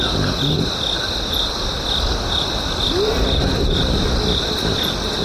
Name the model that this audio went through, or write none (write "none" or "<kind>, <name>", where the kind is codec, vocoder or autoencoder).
none